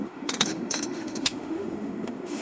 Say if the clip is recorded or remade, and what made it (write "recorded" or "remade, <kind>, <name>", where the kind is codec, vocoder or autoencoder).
remade, autoencoder, DAC-VAE